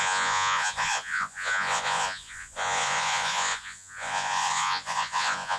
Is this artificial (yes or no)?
yes